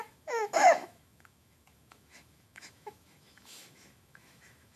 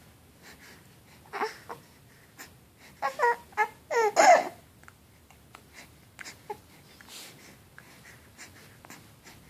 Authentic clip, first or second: second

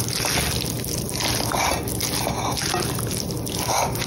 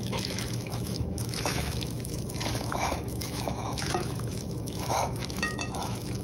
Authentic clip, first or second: first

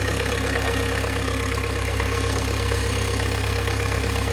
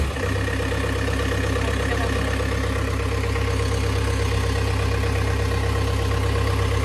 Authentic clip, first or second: second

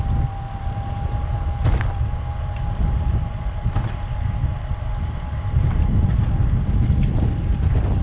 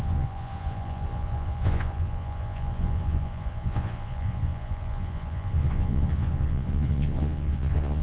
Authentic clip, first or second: first